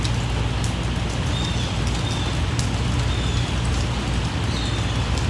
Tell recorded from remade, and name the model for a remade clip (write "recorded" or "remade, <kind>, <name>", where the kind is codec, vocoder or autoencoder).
recorded